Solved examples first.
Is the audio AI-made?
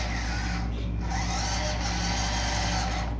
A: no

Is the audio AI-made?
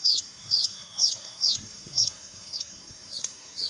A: yes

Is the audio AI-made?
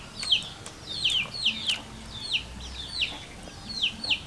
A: no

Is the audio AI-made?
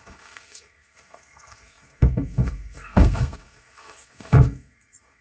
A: yes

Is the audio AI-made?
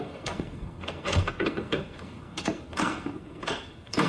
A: yes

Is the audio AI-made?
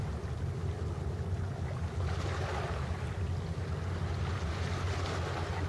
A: no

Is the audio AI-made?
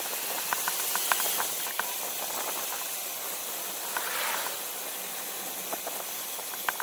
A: no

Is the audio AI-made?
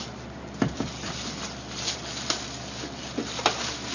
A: no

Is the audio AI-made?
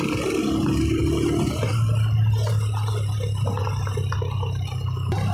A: no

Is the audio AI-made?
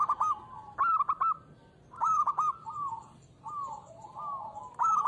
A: no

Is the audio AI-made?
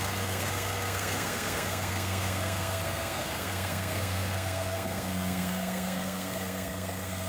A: yes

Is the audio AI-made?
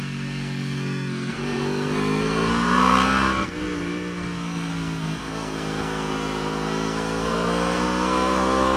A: yes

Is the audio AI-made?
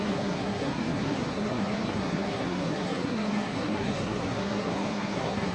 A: yes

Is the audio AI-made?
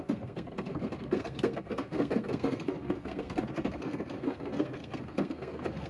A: yes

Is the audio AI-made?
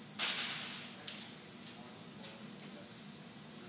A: no